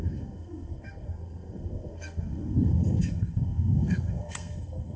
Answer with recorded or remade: remade